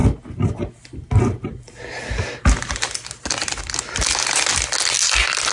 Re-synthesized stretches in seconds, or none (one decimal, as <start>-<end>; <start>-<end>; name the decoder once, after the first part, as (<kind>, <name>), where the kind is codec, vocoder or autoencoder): none